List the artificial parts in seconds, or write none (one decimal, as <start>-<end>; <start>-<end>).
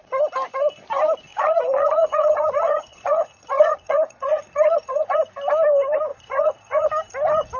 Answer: 1.3-5.2; 6.1-6.9